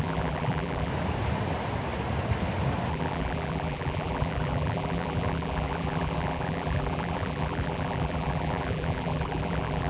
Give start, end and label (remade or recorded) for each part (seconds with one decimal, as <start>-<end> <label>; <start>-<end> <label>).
0.0-0.9 remade; 0.9-2.9 recorded; 2.9-9.9 remade